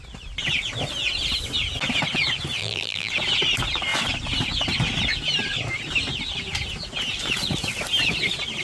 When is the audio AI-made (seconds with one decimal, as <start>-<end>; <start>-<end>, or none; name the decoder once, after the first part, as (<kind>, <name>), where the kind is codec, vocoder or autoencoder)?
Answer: 2.6-3.1 (vocoder, BigVGAN v2)